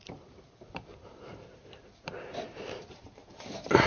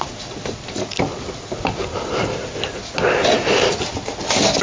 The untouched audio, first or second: second